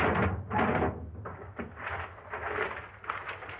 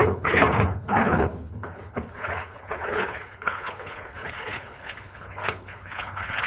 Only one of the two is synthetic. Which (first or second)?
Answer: second